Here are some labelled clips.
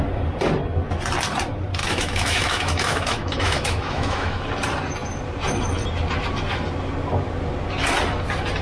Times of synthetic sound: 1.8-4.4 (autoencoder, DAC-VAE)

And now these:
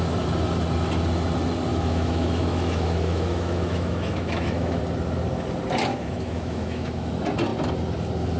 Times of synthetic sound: 1.7-4.8 (autoencoder, DAC-VAE); 5.9-7.1

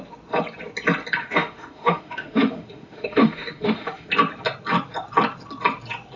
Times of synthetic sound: 1.2-4.1 (autoencoder, DAC-VAE)

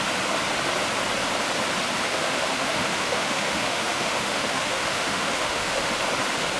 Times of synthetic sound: 2.1-5.9 (autoencoder, DAC-VAE)

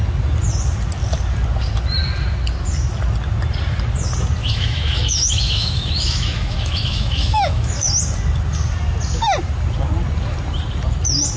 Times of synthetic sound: 4.4-7.9 (autoencoder, DAC-VAE)

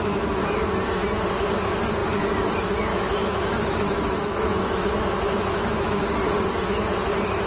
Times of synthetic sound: 2.9-6.3 (autoencoder, DAC-VAE)